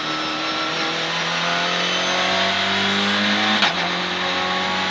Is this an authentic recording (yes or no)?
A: yes